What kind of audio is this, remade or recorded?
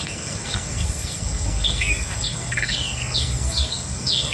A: remade